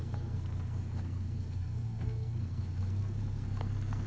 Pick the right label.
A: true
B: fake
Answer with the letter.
B